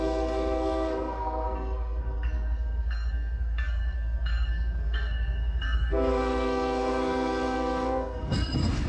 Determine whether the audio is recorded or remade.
remade